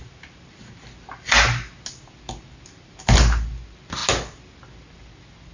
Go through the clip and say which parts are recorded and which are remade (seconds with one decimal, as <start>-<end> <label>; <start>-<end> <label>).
0.0-5.5 recorded